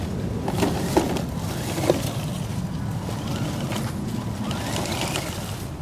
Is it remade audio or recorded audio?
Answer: recorded